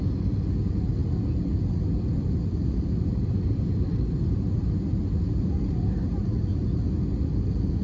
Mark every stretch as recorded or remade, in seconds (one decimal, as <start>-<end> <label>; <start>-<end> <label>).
0.0-7.8 recorded